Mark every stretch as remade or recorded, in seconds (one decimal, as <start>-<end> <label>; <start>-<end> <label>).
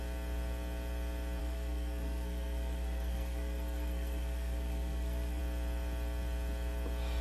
0.0-1.4 recorded; 1.4-5.4 remade; 5.4-7.2 recorded